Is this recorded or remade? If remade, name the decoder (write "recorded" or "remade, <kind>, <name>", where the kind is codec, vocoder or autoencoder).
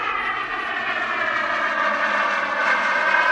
recorded